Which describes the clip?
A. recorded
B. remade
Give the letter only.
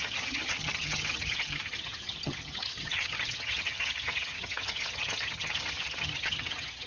B